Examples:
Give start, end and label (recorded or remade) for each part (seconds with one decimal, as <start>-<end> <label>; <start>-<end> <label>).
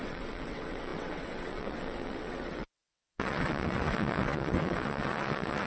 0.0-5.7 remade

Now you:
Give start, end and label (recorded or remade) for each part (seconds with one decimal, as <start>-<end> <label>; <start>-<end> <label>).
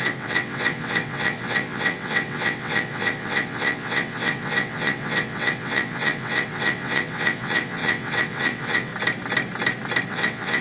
0.0-8.9 remade; 8.9-10.1 recorded; 10.1-10.6 remade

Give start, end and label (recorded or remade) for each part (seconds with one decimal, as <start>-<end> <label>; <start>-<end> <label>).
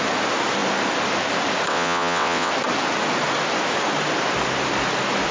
0.0-1.7 recorded; 1.7-2.5 remade; 2.5-5.3 recorded